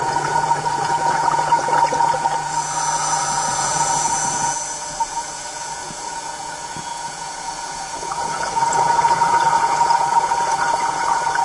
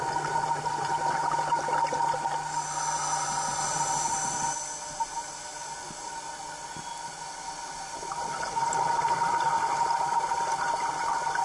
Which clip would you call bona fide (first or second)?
second